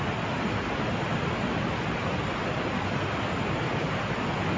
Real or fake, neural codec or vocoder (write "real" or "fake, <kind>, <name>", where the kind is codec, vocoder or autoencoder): real